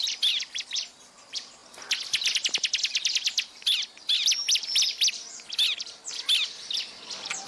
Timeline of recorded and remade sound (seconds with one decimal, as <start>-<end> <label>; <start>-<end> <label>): 0.0-7.5 remade